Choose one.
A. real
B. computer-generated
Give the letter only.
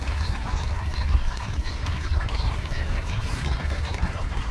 B